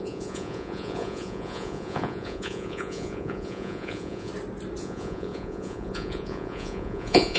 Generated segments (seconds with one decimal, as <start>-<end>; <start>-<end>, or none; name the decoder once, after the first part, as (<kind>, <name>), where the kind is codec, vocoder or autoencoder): 0.0-4.3 (vocoder, Vocos); 4.8-7.4